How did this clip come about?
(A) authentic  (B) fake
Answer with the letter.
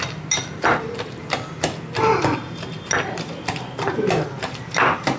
A